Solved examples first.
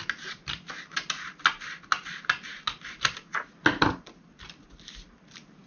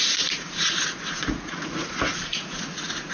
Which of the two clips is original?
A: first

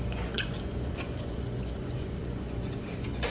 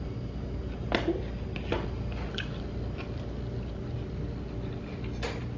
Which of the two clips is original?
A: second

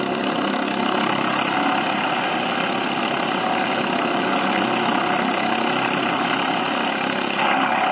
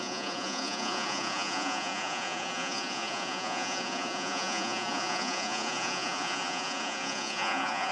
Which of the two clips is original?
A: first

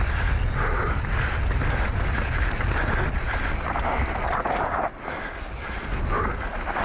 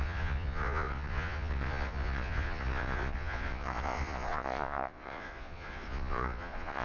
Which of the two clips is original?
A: first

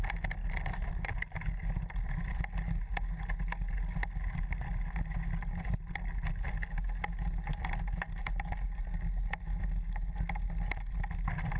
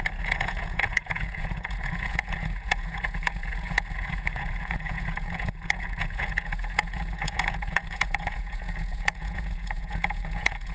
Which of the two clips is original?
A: first